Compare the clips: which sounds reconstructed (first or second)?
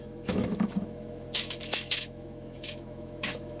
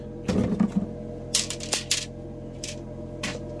first